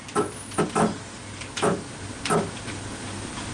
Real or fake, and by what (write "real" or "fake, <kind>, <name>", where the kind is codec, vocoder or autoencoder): real